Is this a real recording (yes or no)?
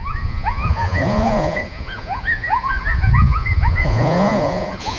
no